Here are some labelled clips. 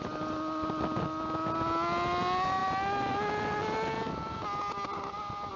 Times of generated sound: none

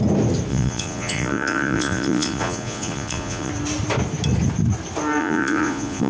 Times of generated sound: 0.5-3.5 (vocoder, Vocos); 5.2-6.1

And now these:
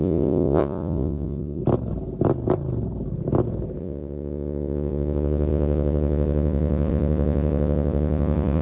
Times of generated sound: 0.0-1.6 (vocoder, Vocos); 3.8-8.6